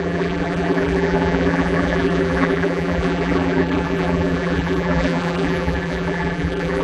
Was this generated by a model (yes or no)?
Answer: yes